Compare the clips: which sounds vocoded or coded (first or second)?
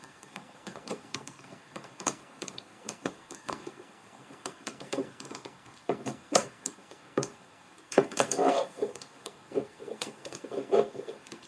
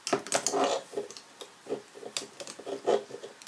first